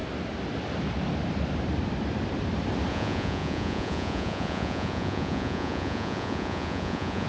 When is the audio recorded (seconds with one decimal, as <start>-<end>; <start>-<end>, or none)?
0.0-2.9